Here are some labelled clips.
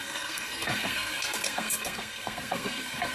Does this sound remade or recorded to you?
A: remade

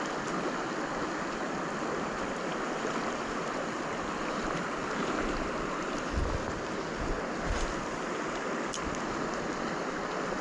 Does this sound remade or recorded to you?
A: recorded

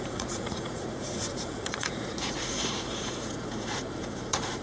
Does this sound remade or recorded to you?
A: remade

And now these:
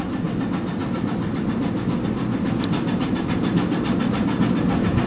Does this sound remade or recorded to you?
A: recorded